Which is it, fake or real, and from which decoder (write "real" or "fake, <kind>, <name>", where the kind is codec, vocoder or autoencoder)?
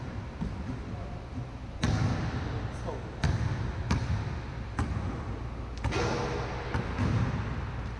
real